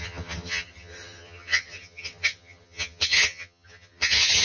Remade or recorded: remade